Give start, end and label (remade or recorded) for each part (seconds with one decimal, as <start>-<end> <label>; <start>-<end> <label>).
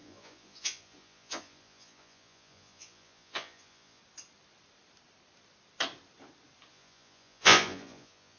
0.0-4.0 remade; 4.0-6.7 recorded; 6.7-8.4 remade